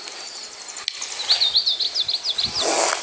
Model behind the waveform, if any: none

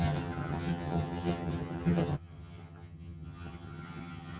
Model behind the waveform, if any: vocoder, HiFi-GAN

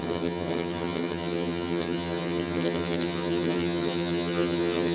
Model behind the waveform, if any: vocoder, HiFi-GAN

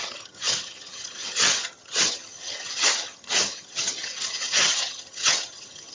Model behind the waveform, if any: vocoder, HiFi-GAN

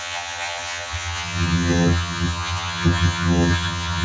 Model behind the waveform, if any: vocoder, HiFi-GAN